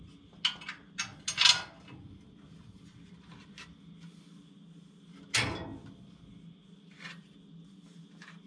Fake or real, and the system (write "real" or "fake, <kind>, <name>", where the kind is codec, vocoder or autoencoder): real